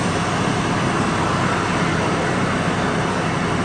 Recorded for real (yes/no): yes